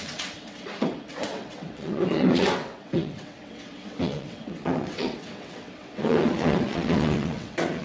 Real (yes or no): no